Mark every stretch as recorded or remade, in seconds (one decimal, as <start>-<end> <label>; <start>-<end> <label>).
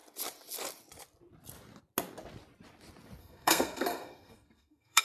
0.0-3.2 recorded; 3.2-5.0 remade